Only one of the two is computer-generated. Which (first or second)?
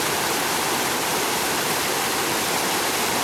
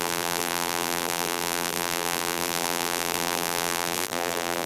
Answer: second